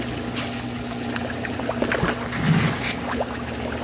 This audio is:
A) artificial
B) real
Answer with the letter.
B